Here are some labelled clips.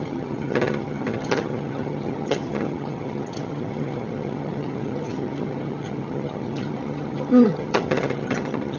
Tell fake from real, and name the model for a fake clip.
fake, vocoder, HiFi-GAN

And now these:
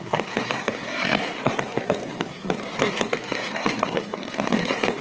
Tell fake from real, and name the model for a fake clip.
fake, codec, SNAC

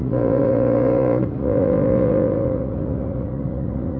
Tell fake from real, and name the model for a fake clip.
fake, vocoder, Vocos